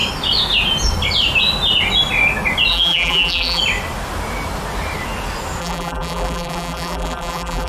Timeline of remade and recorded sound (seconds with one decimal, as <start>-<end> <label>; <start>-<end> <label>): 0.0-2.7 recorded; 2.7-3.6 remade; 3.6-5.6 recorded; 5.6-7.7 remade